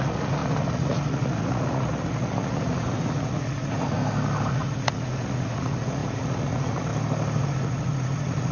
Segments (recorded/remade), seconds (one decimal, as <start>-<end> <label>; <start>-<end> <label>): 0.0-4.0 remade; 4.0-4.5 recorded; 4.5-6.9 remade; 6.9-7.4 recorded; 7.4-8.5 remade